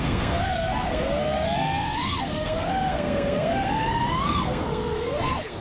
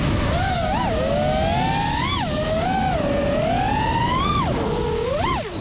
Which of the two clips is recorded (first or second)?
second